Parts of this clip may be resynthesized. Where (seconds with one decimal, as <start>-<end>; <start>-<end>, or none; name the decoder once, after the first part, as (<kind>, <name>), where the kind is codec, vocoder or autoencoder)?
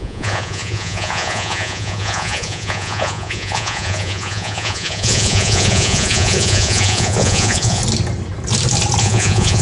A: 0.0-7.8 (vocoder, Vocos); 9.0-9.6